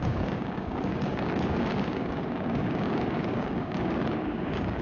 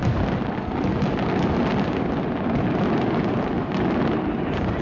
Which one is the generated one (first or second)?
first